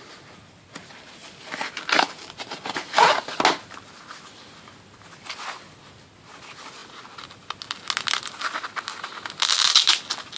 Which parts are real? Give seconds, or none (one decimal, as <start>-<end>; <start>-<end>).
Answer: 0.0-10.4

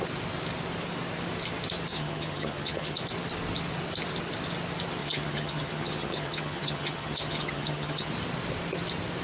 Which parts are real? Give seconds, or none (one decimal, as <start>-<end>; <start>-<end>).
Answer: 0.0-1.9; 3.0-5.0; 8.1-9.2

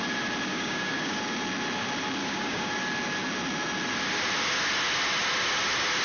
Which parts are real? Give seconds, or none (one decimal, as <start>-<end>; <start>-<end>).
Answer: 0.0-0.5; 1.2-2.2; 2.7-6.0

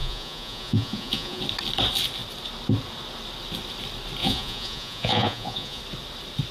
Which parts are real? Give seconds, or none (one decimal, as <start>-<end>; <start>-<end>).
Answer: 1.4-4.2; 5.8-6.5

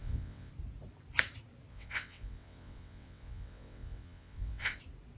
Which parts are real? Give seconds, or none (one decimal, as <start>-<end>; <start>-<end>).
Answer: 0.5-1.7; 4.8-5.2

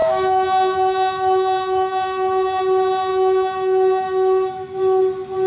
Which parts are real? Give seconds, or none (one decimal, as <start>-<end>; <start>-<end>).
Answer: 2.6-3.1; 5.0-5.5

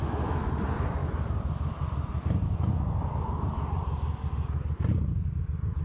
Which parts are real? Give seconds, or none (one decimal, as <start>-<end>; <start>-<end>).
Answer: 0.6-5.8

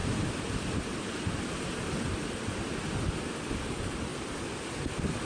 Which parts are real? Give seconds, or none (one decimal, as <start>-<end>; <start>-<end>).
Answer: 0.0-5.3